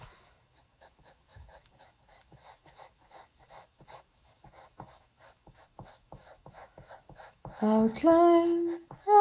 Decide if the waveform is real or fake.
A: fake